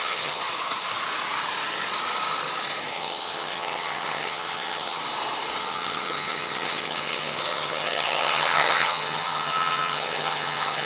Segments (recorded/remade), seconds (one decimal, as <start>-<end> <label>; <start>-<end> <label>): 0.0-0.4 remade; 0.4-2.9 recorded; 2.9-5.0 remade; 5.0-5.6 recorded; 5.6-10.9 remade